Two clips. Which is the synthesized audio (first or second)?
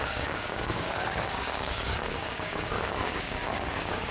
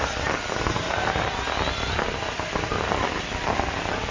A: first